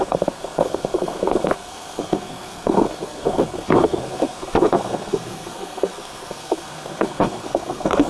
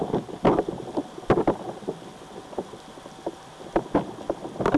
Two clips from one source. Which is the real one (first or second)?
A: second